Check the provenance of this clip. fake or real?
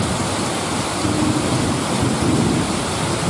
real